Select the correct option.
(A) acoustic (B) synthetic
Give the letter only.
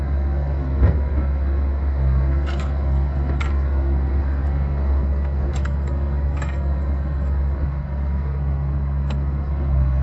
B